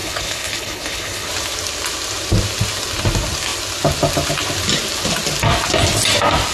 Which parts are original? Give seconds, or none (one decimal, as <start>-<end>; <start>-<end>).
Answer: 1.3-6.5